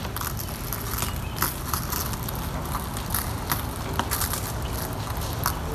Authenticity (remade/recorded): recorded